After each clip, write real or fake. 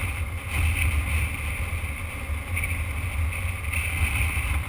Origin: real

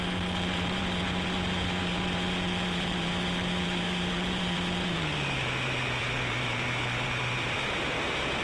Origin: fake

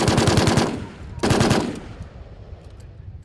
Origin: real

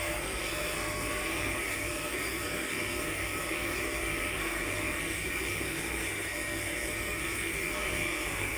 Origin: fake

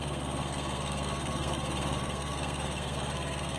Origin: fake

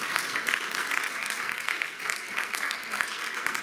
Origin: fake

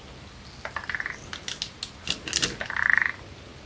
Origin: real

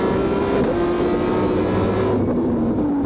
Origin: real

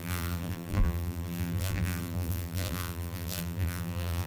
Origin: fake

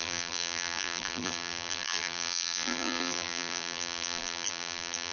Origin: fake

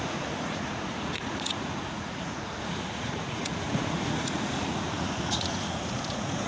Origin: fake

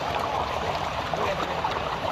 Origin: fake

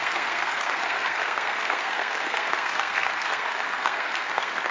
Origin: fake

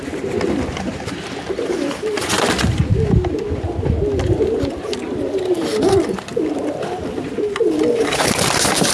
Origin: fake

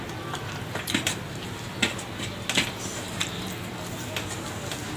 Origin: real